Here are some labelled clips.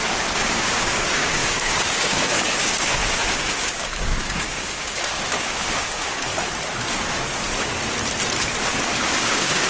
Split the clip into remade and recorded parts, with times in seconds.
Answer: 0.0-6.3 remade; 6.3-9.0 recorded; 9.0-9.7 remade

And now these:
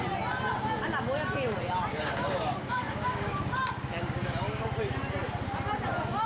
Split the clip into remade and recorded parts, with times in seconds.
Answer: 0.0-1.9 recorded; 1.9-4.6 remade; 4.6-6.3 recorded

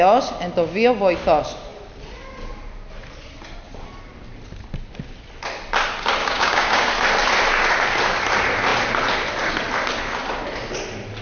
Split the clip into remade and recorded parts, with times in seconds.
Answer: 0.0-6.2 recorded; 6.2-6.9 remade; 6.9-11.2 recorded

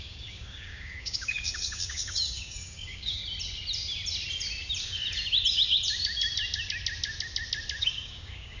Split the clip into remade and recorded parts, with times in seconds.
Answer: 0.0-3.2 remade; 3.2-7.8 recorded; 7.8-8.6 remade

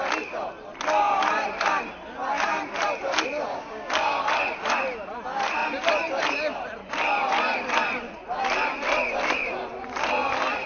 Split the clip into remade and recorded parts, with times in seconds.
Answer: 0.0-3.5 recorded; 3.5-4.2 remade; 4.2-10.7 recorded

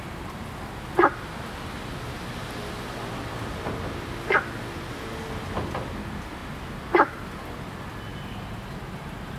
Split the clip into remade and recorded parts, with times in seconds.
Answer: 0.0-9.4 recorded

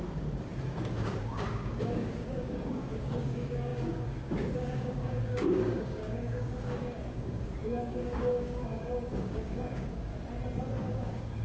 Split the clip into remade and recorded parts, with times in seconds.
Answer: 0.0-10.1 remade; 10.1-10.7 recorded; 10.7-11.4 remade